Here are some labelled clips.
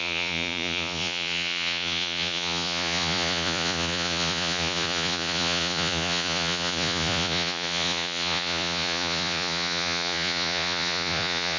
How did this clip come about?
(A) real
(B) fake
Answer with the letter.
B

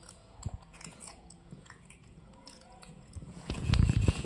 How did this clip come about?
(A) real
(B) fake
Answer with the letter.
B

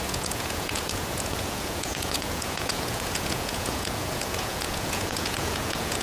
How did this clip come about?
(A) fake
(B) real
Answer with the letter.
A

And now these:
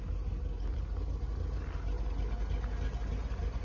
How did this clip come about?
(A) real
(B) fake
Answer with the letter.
A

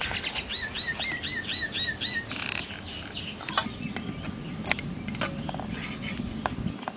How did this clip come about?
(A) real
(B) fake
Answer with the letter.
A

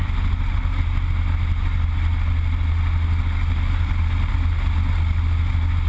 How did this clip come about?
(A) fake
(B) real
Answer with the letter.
B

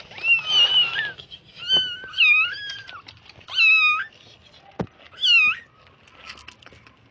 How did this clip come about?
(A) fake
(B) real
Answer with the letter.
B